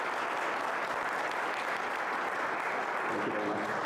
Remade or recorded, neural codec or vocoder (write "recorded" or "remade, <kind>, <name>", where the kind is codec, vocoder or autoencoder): recorded